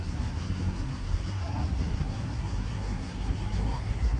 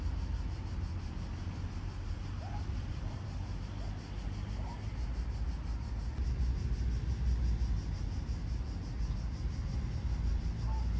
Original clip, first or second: second